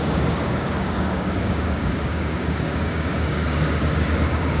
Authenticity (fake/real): fake